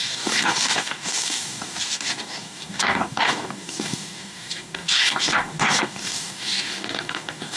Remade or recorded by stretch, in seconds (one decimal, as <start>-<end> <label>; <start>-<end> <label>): 0.0-7.6 remade